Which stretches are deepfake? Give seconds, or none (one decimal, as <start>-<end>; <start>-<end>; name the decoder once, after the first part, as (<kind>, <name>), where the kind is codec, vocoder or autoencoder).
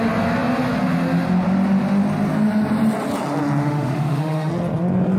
3.6-4.5 (autoencoder, DAC-VAE)